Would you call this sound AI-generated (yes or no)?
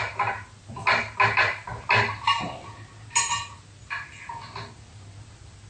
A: no